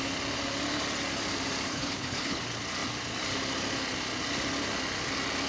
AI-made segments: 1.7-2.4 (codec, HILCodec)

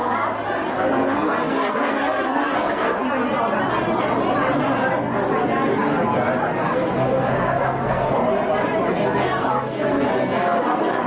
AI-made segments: 0.7-3.0 (codec, SNAC); 6.6-8.2; 8.9-11.1

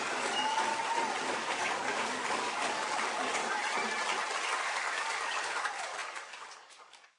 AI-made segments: 0.0-0.7 (codec, DAC); 1.2-3.4; 4.6-7.2

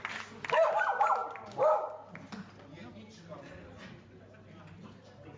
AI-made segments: none

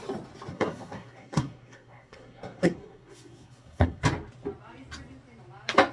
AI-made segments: 0.5-4.0 (codec, SNAC)